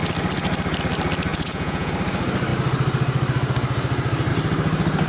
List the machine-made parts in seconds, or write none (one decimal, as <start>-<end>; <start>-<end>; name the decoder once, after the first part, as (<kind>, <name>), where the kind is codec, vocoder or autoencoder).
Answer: 1.3-1.9 (vocoder, Vocos)